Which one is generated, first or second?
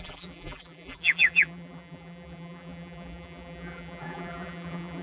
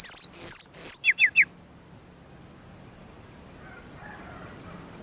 first